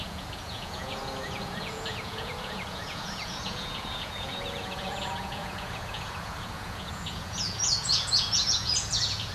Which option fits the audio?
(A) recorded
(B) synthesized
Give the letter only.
B